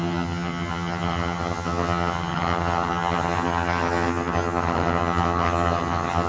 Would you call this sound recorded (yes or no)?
no